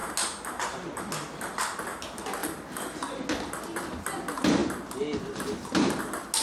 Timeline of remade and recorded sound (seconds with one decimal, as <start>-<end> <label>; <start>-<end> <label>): 0.0-6.4 recorded